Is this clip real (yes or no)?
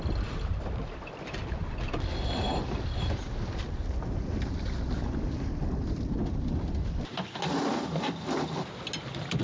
yes